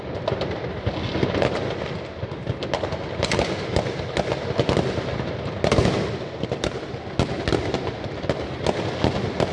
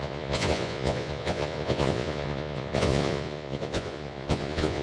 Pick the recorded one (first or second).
first